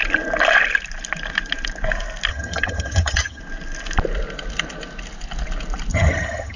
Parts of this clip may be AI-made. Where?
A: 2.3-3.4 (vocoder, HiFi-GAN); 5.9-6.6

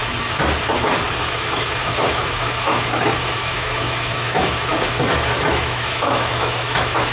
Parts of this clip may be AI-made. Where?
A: 1.1-4.7 (autoencoder, DAC-VAE); 5.5-7.1

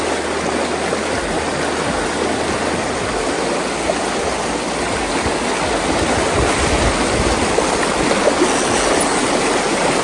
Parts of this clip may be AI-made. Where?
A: none

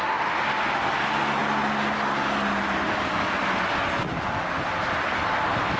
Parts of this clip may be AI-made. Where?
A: none

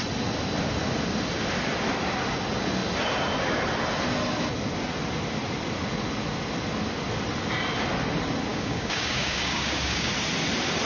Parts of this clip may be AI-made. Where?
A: 8.5-10.1 (codec, DAC)

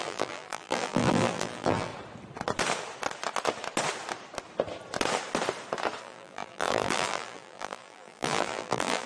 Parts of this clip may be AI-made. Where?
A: 0.0-1.9 (vocoder, BigVGAN v2); 6.0-9.1

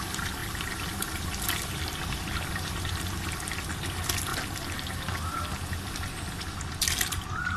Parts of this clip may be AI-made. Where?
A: none